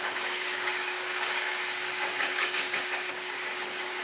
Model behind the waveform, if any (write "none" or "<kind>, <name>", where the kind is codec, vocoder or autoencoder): codec, DAC